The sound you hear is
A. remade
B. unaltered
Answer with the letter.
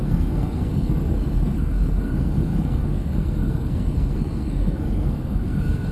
A